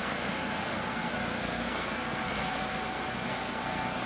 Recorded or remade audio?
remade